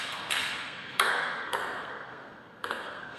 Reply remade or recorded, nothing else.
remade